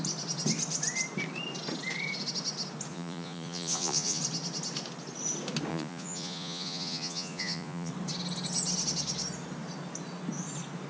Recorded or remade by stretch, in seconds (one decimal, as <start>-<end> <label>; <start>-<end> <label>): 0.0-2.9 recorded; 2.9-4.2 remade; 4.2-5.7 recorded; 5.7-7.9 remade; 7.9-10.9 recorded